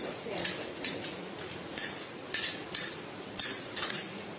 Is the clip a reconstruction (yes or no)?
yes